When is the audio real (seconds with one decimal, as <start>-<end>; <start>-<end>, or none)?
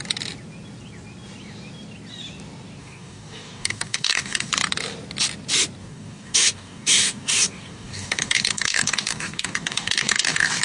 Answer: 0.0-2.8; 4.5-5.8